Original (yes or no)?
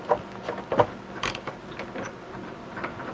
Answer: yes